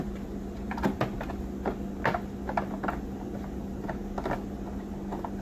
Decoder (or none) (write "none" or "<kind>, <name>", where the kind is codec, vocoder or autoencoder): none